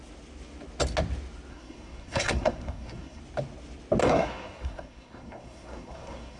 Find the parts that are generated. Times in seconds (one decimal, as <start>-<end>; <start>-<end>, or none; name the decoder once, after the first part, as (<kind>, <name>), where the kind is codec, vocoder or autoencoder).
1.5-3.2 (codec, SNAC); 4.0-6.4